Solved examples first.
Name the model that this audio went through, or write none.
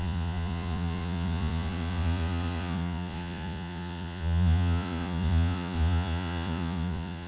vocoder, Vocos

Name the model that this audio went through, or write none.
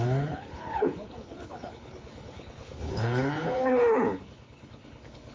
codec, HILCodec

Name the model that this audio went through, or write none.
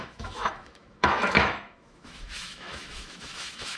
autoencoder, DAC-VAE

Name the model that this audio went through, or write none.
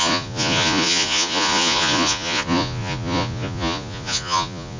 vocoder, Vocos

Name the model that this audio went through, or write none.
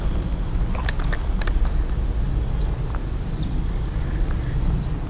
none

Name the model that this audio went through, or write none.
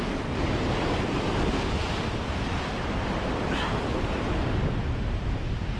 none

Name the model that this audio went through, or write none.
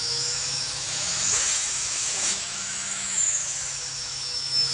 autoencoder, DAC-VAE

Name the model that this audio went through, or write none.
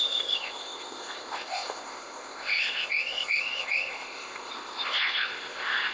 codec, ZipCodec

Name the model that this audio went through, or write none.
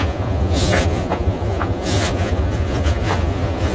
vocoder, Vocos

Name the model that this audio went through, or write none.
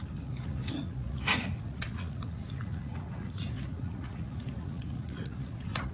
vocoder, Vocos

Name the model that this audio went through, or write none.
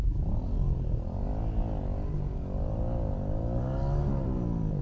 none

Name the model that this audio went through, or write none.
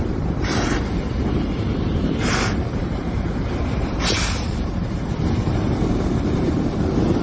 vocoder, BigVGAN v2